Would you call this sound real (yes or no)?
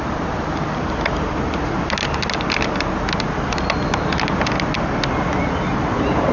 yes